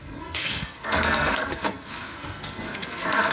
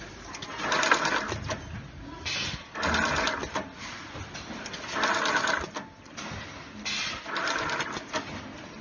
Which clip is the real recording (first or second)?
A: second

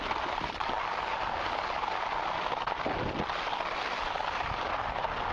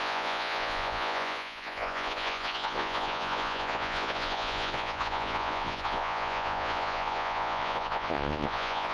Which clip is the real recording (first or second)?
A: first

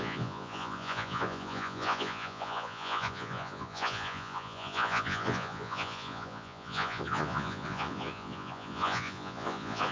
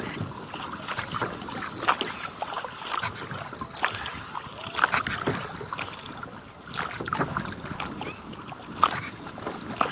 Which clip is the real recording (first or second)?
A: second